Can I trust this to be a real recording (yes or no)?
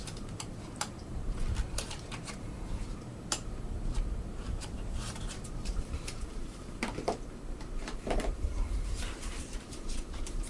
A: no